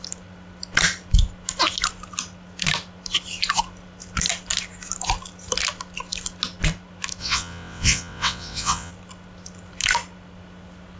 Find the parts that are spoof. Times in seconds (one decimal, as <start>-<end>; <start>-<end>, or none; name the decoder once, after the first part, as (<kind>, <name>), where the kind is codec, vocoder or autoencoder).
7.2-8.9 (vocoder, WaveNeXt)